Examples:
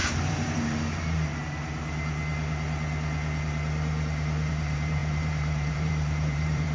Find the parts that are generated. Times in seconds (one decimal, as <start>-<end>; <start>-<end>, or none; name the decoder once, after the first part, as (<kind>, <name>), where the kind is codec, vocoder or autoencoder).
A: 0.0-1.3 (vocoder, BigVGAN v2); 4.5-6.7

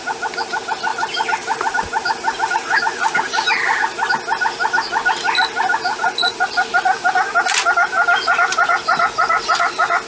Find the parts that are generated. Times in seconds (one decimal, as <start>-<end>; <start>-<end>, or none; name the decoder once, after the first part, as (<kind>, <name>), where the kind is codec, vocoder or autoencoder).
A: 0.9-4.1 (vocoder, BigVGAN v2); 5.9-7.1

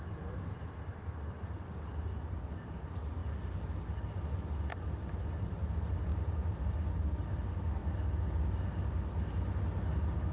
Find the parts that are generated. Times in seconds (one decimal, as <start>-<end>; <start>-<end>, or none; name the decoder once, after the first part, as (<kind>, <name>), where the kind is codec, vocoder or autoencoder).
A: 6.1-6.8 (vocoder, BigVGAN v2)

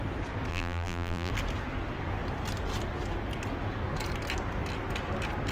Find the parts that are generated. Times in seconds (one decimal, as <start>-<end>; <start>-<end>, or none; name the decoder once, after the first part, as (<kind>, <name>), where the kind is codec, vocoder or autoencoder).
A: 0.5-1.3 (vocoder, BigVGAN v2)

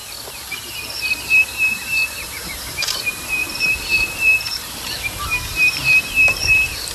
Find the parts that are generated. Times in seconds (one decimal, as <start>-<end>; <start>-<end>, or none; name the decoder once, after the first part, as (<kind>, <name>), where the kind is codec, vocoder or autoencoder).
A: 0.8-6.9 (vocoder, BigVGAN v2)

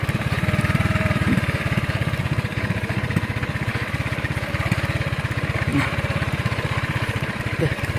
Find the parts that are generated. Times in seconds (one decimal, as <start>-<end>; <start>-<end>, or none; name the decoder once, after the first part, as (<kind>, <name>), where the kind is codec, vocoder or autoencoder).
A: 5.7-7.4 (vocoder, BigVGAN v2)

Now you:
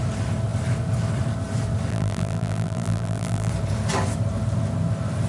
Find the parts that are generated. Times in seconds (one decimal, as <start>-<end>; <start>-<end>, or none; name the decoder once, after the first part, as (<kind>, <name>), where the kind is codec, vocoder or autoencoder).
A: 1.9-3.5 (vocoder, BigVGAN v2)

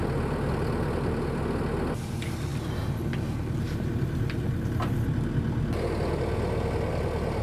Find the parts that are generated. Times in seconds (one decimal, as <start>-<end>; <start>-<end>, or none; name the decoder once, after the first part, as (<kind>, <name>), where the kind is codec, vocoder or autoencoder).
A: none